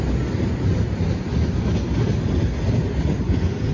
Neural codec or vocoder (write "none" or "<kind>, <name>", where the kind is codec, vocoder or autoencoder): none